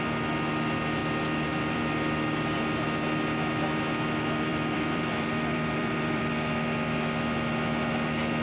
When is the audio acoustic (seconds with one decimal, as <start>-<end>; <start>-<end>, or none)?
0.0-1.0; 1.9-4.5; 6.3-8.4